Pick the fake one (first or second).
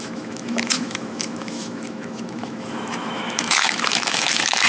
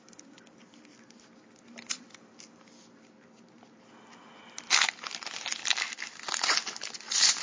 first